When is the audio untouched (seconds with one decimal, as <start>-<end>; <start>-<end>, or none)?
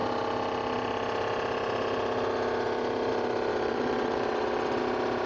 0.0-3.5; 4.8-5.3